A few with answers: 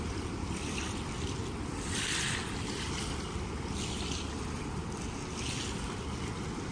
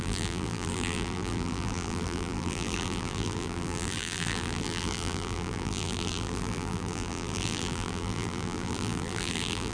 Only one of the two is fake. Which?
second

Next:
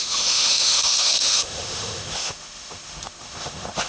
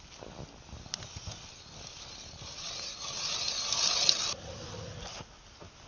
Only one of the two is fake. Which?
first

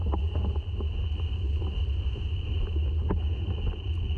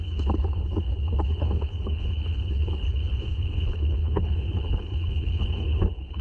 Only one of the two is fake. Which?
second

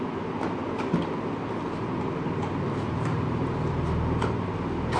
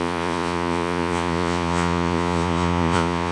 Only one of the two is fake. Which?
second